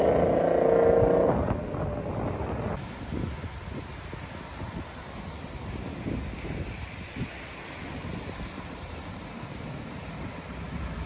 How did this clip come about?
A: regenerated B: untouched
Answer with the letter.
B